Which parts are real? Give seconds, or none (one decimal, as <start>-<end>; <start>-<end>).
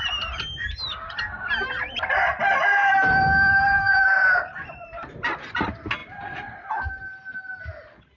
0.0-2.4; 5.1-6.0; 6.9-8.2